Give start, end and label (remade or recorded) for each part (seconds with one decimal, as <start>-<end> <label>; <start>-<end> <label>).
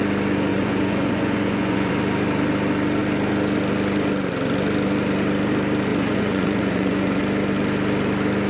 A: 0.0-0.5 recorded; 0.5-1.9 remade; 1.9-5.9 recorded; 5.9-7.2 remade; 7.2-8.5 recorded